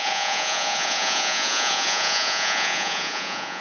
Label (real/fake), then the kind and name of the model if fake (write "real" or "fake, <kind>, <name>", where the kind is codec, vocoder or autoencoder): fake, vocoder, Vocos